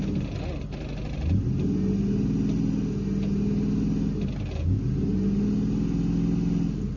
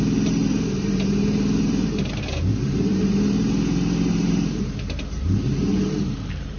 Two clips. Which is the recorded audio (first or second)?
first